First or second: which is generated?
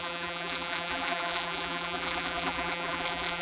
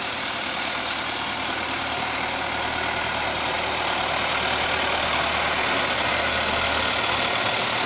first